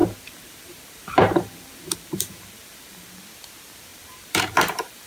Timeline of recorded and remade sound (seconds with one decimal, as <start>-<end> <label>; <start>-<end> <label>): 0.0-3.1 remade; 3.1-3.9 recorded; 3.9-5.1 remade